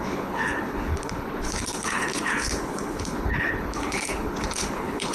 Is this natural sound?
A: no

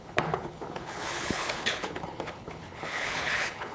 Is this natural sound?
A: no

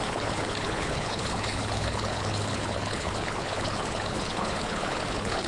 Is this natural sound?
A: no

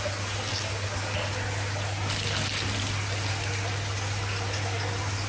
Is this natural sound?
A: yes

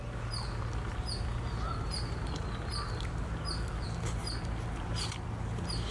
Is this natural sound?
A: yes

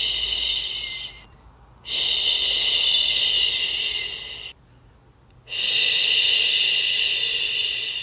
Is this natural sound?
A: yes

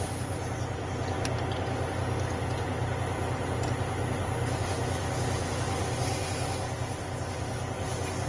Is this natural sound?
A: yes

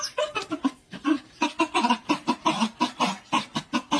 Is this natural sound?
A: yes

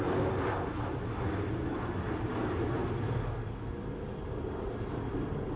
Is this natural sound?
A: yes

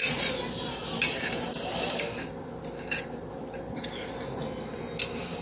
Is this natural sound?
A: yes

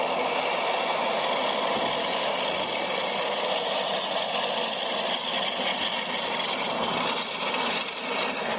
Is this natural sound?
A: yes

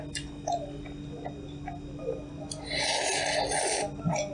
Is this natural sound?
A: yes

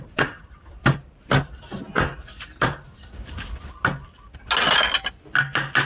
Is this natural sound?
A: yes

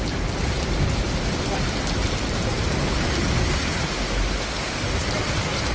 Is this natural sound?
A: yes